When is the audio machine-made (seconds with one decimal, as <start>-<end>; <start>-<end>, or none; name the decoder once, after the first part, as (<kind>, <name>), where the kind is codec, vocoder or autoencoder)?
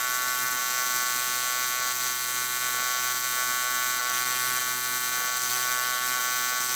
0.0-0.6 (vocoder, BigVGAN v2); 4.0-4.6; 5.5-6.2